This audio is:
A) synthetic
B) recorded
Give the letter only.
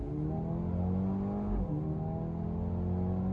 B